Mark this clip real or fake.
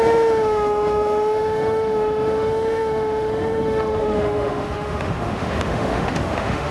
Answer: fake